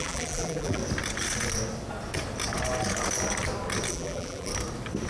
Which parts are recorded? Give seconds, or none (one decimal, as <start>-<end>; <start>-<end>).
0.8-3.9; 4.5-5.1